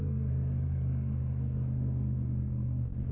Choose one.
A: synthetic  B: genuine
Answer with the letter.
A